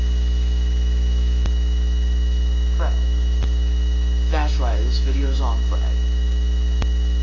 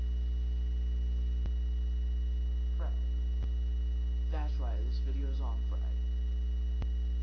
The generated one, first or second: first